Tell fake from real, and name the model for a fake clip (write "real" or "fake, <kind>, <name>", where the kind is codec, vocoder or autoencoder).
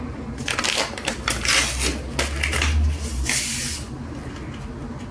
real